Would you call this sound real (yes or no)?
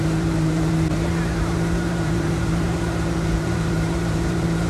no